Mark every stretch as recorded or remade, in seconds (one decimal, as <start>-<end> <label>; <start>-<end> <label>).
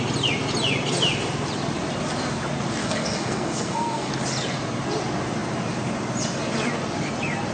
0.0-2.8 recorded; 2.8-4.1 remade; 4.1-7.5 recorded